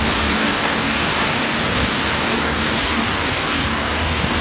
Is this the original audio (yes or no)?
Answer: no